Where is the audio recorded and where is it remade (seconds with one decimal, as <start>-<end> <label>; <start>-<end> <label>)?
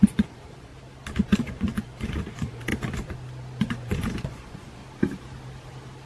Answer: 0.0-0.7 remade; 0.7-1.4 recorded; 1.4-2.7 remade; 2.7-3.6 recorded; 3.6-4.8 remade; 4.8-6.1 recorded